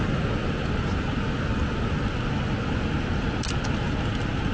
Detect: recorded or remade recorded